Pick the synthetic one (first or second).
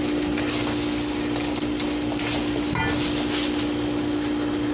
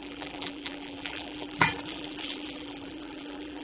second